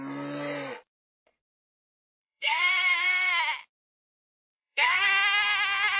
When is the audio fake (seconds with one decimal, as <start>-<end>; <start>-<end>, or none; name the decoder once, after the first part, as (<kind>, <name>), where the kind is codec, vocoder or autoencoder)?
1.1-3.3 (codec, SNAC); 4.0-5.1